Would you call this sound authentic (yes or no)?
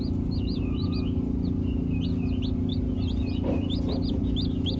yes